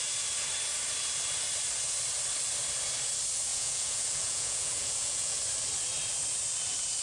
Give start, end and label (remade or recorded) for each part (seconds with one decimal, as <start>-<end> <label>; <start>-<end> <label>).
0.0-3.5 recorded; 3.5-5.4 remade; 5.4-7.0 recorded